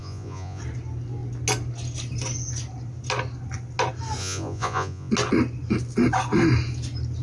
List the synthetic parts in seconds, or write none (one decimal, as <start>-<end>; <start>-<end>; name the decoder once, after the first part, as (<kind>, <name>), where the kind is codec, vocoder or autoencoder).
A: 0.0-0.6 (vocoder, Vocos); 4.2-5.1